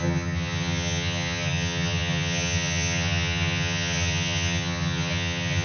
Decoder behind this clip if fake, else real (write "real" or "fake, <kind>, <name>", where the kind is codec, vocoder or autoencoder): fake, vocoder, HiFi-GAN